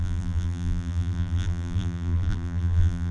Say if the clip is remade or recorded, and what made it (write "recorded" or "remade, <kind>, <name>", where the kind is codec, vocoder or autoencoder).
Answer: remade, vocoder, BigVGAN v2